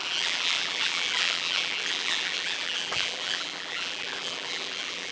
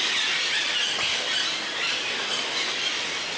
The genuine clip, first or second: second